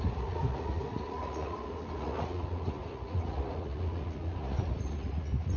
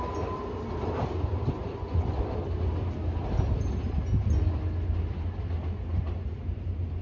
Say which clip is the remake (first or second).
first